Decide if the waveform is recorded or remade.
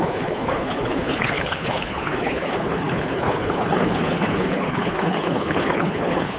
remade